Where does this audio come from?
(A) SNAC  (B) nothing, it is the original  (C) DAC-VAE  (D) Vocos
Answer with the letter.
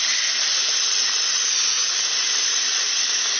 B